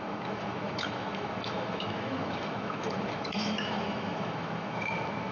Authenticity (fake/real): fake